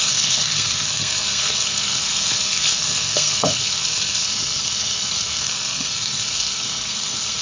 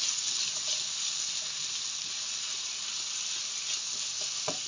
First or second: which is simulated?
first